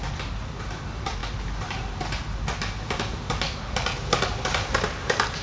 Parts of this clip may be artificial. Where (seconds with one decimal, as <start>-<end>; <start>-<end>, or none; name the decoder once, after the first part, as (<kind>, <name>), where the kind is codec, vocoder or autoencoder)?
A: none